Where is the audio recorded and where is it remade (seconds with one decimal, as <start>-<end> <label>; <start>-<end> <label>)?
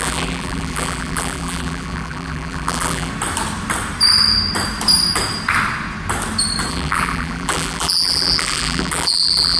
0.0-3.1 remade; 3.1-6.7 recorded; 6.7-9.6 remade